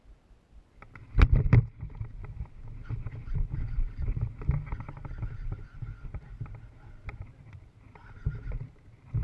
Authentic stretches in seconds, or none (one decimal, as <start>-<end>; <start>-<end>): 0.0-9.2